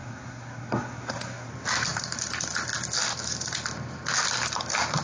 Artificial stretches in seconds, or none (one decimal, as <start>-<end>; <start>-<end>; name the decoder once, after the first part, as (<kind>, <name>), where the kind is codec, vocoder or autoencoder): 0.0-1.5 (codec, SNAC)